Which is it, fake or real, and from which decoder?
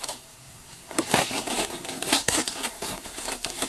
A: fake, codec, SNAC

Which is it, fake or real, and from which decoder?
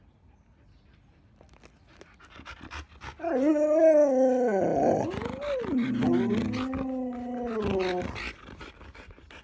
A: real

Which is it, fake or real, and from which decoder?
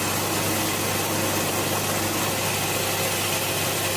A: real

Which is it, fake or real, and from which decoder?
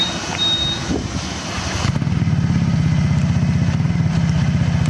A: real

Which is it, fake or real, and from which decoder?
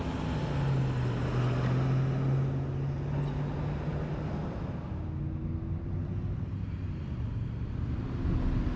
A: real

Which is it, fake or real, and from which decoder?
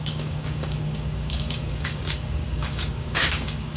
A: fake, codec, DAC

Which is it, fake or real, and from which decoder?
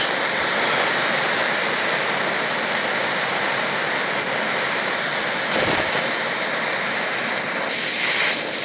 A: real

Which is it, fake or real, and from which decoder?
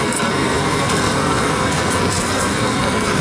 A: fake, codec, SNAC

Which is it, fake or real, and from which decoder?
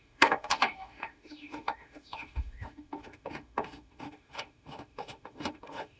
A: fake, autoencoder, DAC-VAE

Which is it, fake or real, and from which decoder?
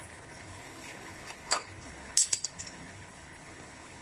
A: fake, codec, HILCodec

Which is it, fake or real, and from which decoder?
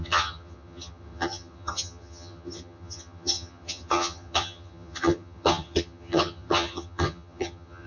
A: fake, vocoder, HiFi-GAN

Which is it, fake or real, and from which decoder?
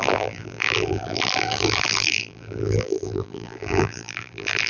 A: fake, vocoder, BigVGAN v2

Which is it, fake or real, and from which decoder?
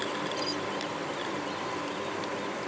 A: real